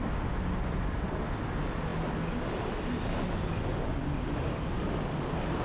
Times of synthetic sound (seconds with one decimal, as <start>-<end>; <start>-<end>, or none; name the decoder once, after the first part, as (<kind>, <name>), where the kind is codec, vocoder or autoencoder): none